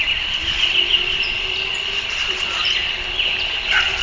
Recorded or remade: remade